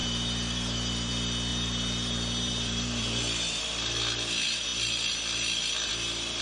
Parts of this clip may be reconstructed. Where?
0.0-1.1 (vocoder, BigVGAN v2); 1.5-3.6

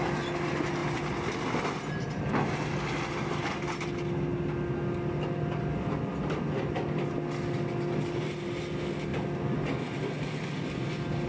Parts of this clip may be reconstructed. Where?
none

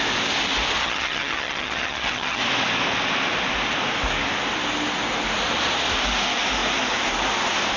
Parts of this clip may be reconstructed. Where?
0.8-2.4 (vocoder, HiFi-GAN)

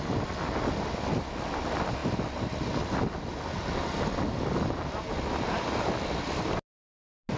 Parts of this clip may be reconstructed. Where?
none